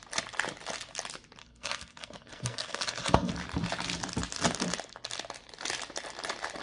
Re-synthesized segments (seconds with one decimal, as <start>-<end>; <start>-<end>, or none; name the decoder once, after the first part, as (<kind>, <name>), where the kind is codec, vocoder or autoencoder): 1.4-3.3 (codec, SNAC)